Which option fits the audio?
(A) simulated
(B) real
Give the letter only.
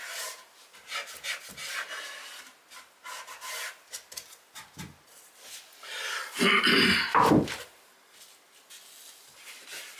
B